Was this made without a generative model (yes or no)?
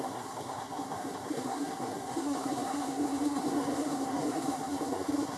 no